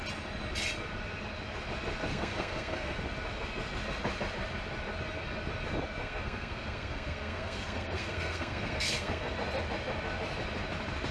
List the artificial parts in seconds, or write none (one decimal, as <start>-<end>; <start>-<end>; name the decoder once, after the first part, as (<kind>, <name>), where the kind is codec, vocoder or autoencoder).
2.1-3.0 (codec, SNAC); 6.0-9.3